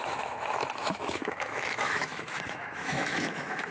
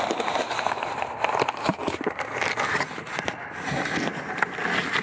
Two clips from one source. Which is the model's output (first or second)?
first